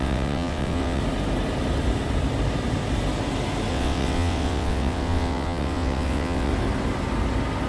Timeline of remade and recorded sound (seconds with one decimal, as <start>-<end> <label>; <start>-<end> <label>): 0.0-1.0 remade; 1.0-3.7 recorded; 3.7-6.5 remade; 6.5-7.7 recorded

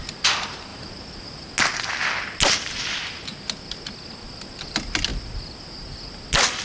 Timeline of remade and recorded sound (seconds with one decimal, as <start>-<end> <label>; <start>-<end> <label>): 0.0-6.6 recorded